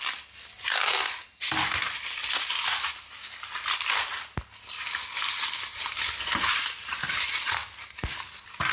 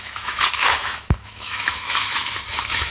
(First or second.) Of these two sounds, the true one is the first